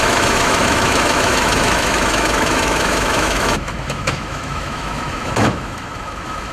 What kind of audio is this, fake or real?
fake